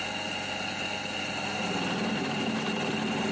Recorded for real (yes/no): yes